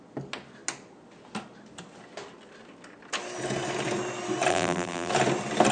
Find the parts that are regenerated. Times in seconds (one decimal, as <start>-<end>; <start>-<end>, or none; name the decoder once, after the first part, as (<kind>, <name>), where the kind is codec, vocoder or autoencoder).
4.5-5.1 (vocoder, BigVGAN v2)